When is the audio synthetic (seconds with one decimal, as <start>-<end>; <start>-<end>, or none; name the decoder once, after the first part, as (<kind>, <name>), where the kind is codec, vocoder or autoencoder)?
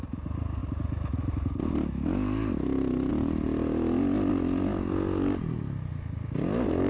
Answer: none